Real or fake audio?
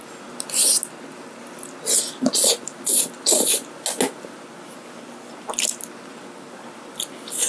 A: real